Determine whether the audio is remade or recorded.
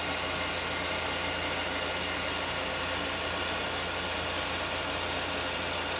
recorded